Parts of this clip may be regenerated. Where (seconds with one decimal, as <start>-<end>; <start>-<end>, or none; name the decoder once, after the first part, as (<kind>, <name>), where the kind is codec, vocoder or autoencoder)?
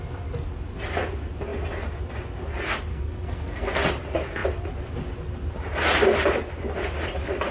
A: 2.9-3.8 (codec, SNAC)